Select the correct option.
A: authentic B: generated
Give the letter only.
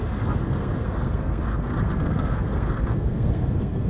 B